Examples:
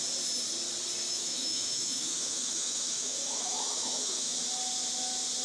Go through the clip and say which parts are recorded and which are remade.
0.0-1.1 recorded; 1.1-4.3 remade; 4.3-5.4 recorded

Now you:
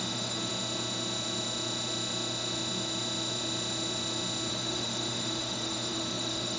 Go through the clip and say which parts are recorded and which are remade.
0.0-0.5 remade; 0.5-4.5 recorded; 4.5-6.6 remade

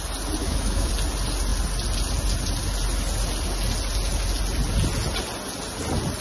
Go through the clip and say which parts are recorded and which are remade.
0.0-0.4 recorded; 0.4-0.9 remade; 0.9-6.2 recorded

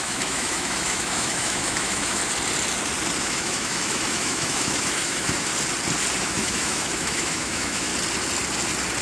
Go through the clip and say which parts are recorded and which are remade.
0.0-2.2 remade; 2.2-3.2 recorded; 3.2-5.5 remade; 5.5-6.2 recorded; 6.2-7.9 remade; 7.9-9.0 recorded

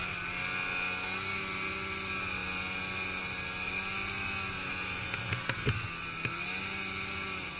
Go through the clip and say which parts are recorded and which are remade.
0.0-7.6 recorded